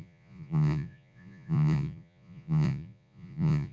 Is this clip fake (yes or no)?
yes